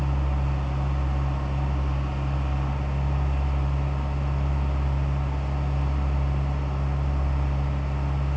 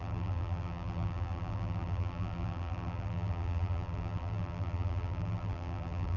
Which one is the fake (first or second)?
second